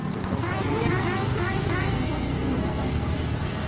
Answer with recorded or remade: remade